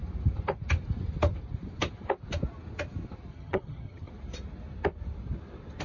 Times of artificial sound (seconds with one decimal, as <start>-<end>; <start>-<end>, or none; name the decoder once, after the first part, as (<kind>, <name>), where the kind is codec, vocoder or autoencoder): 3.3-4.1 (vocoder, HiFi-GAN)